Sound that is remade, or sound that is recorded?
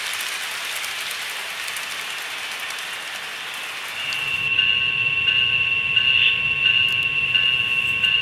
recorded